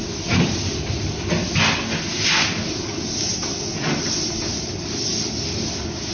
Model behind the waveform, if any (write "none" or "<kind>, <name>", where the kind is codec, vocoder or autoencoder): none